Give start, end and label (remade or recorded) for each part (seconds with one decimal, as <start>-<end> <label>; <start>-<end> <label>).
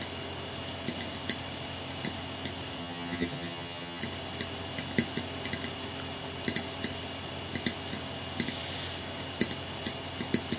0.0-2.8 recorded; 2.8-4.0 remade; 4.0-10.6 recorded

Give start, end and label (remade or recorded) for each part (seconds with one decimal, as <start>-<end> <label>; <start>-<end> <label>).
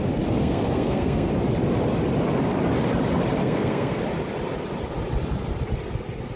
0.0-0.4 recorded; 0.4-1.3 remade; 1.3-3.4 recorded; 3.4-4.0 remade; 4.0-6.4 recorded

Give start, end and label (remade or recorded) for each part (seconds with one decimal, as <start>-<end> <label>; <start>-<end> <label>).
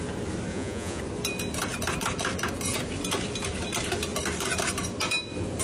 0.0-0.5 recorded; 0.5-1.0 remade; 1.0-5.6 recorded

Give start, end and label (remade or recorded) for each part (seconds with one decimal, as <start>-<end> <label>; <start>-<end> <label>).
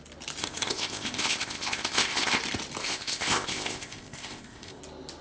0.0-0.4 recorded; 0.4-2.4 remade; 2.4-2.8 recorded; 2.8-4.8 remade; 4.8-5.2 recorded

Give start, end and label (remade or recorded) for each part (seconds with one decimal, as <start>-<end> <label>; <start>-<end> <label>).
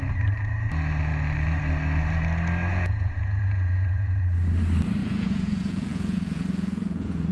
0.0-2.7 recorded; 2.7-4.2 remade; 4.2-5.0 recorded; 5.0-7.3 remade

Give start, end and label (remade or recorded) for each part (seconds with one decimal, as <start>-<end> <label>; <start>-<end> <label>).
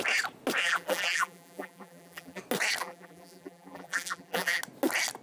0.0-0.6 recorded; 0.6-2.4 remade; 2.4-2.8 recorded; 2.8-4.6 remade; 4.6-5.2 recorded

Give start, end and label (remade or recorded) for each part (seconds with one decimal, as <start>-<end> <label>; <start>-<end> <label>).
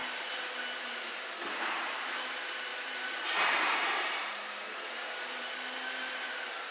0.0-2.7 recorded; 2.7-5.5 remade; 5.5-6.7 recorded